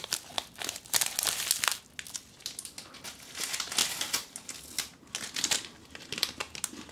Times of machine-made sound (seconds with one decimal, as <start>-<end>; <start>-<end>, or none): 3.8-4.6